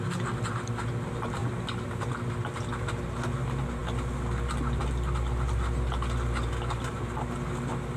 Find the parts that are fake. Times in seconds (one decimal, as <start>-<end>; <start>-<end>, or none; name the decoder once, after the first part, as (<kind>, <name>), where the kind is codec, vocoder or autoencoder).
1.4-2.0 (vocoder, BigVGAN v2)